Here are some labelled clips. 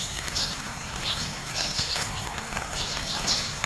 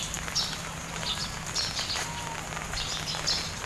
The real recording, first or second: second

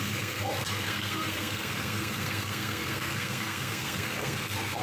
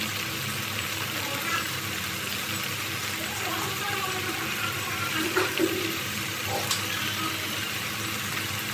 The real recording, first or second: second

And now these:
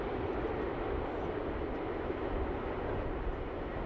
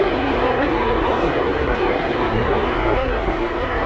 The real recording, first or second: first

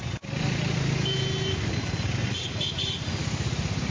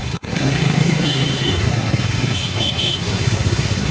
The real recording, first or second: first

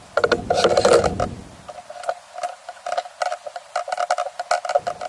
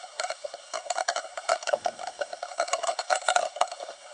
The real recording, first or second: first